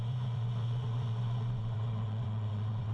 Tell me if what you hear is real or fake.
fake